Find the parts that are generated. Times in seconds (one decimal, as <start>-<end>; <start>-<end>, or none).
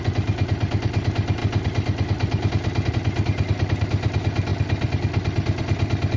none